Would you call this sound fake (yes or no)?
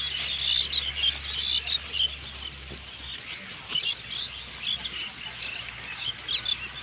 no